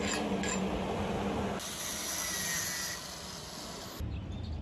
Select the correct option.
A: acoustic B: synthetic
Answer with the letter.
A